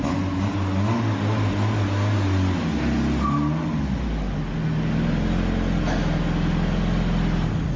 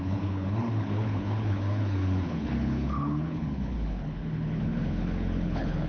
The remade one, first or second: second